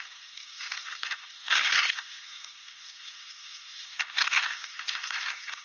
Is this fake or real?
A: fake